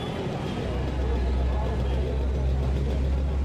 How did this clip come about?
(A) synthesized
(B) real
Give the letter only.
B